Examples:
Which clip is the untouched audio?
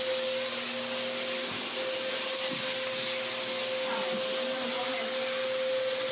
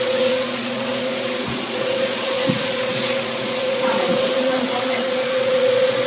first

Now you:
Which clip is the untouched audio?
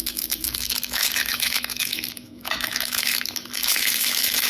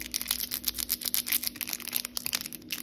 second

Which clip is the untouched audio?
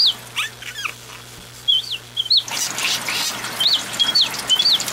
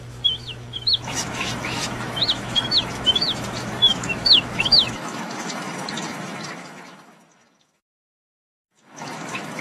first